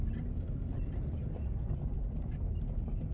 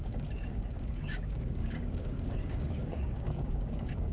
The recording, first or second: first